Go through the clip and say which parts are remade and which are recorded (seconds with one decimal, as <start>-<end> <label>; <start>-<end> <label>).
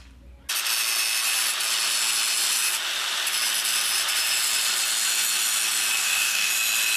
0.0-6.0 recorded; 6.0-6.5 remade; 6.5-7.0 recorded